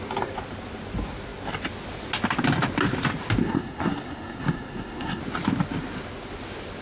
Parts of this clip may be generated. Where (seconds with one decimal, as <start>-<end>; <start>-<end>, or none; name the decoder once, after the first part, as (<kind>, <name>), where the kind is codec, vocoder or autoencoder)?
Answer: 3.4-5.2 (codec, SNAC)